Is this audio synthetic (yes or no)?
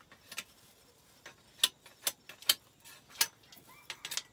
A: no